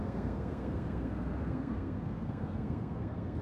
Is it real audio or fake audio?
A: fake